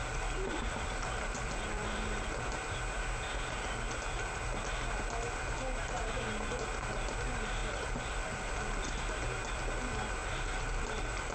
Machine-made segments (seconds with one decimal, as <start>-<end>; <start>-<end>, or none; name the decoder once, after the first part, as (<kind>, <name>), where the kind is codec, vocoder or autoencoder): 0.0-2.5 (vocoder, BigVGAN v2); 7.6-8.5; 10.2-11.3